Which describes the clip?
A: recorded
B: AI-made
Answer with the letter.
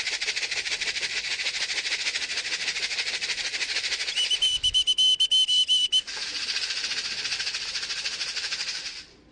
A